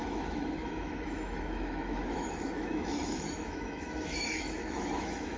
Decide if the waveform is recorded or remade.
remade